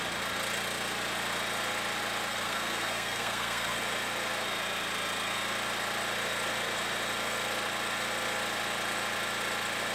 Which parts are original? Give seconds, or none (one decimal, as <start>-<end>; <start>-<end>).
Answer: 0.0-2.3; 3.8-9.9